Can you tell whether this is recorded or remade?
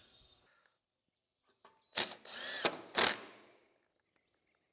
recorded